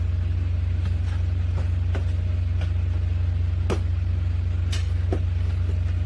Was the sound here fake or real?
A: real